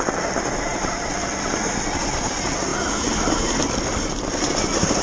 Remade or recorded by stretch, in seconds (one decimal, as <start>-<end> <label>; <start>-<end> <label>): 0.0-5.0 recorded